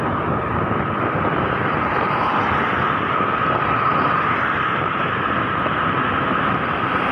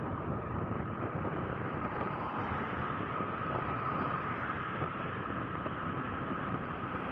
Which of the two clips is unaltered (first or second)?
first